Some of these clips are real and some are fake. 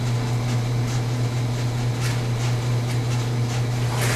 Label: real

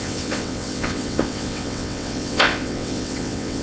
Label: fake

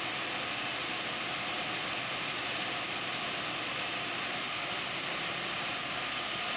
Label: real